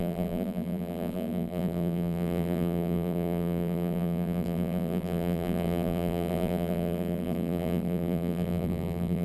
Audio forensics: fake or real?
fake